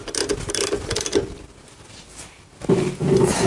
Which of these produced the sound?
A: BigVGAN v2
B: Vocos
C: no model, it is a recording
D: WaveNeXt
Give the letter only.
C